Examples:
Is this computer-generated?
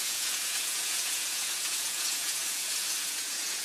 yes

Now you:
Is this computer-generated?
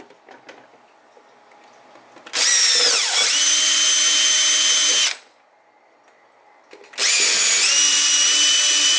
no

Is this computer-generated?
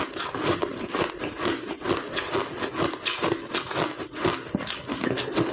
no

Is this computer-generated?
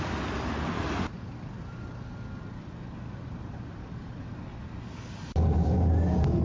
no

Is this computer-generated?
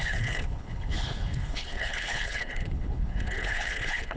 yes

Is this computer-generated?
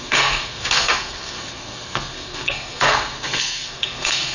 yes